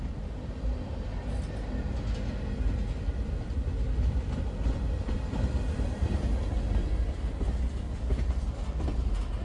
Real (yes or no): yes